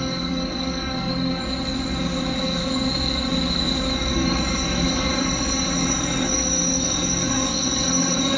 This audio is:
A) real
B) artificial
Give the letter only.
B